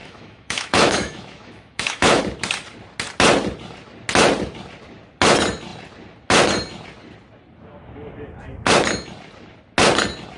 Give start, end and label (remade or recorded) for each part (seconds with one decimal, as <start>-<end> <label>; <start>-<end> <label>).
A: 0.0-2.2 remade; 2.2-10.4 recorded